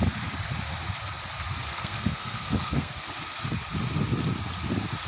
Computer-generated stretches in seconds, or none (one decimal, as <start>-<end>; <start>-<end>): 1.6-3.1